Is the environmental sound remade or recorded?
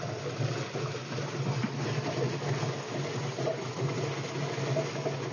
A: recorded